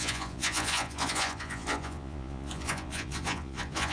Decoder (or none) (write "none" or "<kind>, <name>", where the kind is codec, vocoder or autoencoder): vocoder, Vocos